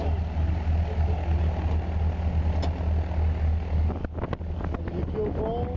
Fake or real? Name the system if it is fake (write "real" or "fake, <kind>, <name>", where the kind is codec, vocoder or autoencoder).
real